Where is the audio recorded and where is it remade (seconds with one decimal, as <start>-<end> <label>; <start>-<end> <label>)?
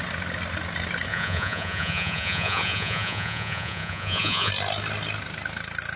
0.0-1.1 recorded; 1.1-4.5 remade; 4.5-6.0 recorded